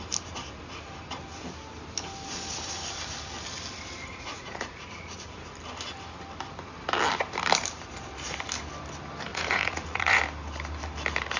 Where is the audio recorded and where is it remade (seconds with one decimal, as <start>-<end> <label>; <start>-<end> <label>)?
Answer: 0.0-4.1 recorded; 4.1-5.3 remade; 5.3-9.3 recorded; 9.3-10.2 remade; 10.2-11.4 recorded